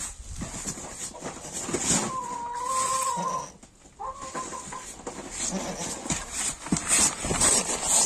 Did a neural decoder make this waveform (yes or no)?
no